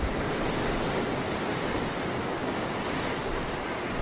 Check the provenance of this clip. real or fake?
real